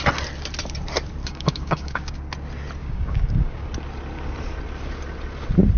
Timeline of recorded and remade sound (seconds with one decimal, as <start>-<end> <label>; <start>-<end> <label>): 0.0-1.2 recorded; 1.2-2.2 remade; 2.2-2.8 recorded; 2.8-3.7 remade; 3.7-5.8 recorded